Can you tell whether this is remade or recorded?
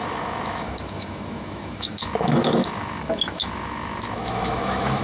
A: remade